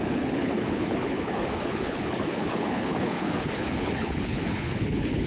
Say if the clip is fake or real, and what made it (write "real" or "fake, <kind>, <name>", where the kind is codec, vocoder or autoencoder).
fake, codec, HILCodec